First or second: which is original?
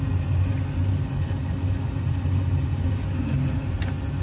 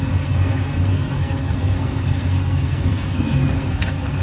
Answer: first